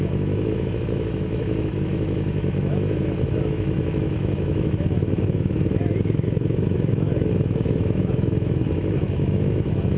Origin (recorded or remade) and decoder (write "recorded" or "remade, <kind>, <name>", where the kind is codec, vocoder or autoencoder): remade, autoencoder, DAC-VAE